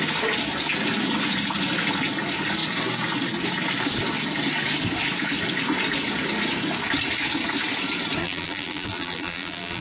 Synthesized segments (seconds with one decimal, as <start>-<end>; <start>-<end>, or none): 8.2-9.8